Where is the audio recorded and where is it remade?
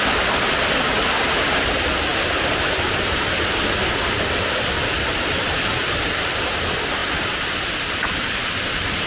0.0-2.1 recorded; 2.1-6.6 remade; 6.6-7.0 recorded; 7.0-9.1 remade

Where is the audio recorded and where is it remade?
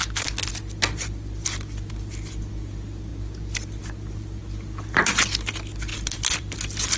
0.0-0.5 remade; 0.5-5.9 recorded; 5.9-6.5 remade; 6.5-7.0 recorded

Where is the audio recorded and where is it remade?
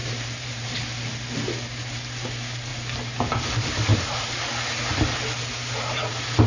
0.0-1.1 remade; 1.1-3.9 recorded; 3.9-4.4 remade; 4.4-5.5 recorded; 5.5-6.1 remade; 6.1-6.5 recorded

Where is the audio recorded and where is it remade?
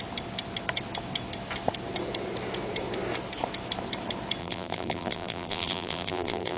0.0-4.4 recorded; 4.4-6.6 remade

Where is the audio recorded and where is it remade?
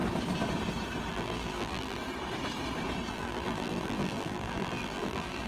0.0-1.1 recorded; 1.1-2.0 remade; 2.0-3.1 recorded; 3.1-5.5 remade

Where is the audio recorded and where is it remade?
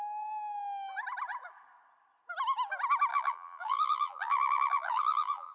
0.0-3.1 recorded; 3.1-5.5 remade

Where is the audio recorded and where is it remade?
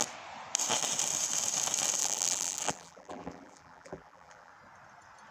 0.0-2.0 recorded; 2.0-4.5 remade; 4.5-5.3 recorded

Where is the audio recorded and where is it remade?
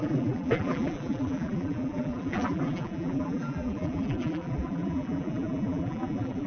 0.0-6.5 remade